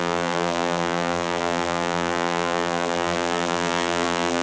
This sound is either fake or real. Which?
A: fake